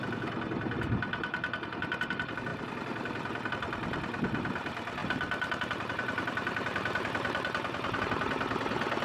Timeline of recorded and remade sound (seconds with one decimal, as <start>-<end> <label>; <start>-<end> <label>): 0.0-2.5 recorded; 2.5-3.5 remade; 3.5-5.0 recorded; 5.0-8.0 remade; 8.0-9.0 recorded